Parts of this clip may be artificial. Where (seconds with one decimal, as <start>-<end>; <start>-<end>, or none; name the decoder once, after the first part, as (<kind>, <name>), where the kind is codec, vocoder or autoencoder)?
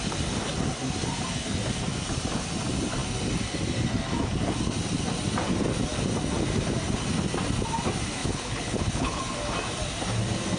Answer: 8.2-9.2 (codec, HILCodec)